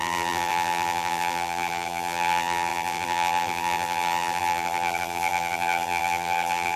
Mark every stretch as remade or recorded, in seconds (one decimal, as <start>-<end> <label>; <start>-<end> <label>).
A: 0.0-6.8 remade